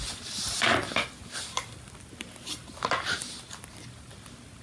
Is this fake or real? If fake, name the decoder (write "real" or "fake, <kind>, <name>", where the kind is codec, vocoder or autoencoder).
real